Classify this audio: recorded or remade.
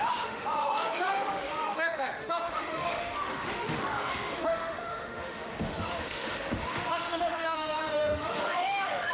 remade